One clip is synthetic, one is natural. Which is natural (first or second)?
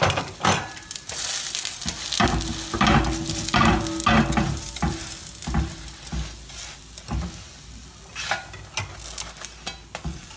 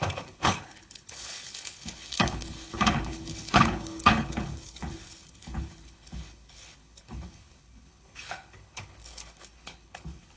first